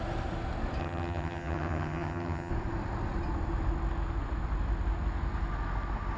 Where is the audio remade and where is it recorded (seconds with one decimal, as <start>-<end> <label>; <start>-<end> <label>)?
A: 0.0-0.8 recorded; 0.8-2.5 remade; 2.5-6.2 recorded